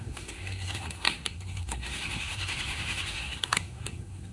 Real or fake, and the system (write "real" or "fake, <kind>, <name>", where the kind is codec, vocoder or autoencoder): fake, codec, SNAC